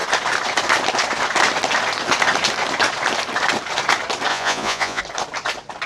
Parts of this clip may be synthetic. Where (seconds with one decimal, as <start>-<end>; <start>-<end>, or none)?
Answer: 4.3-5.0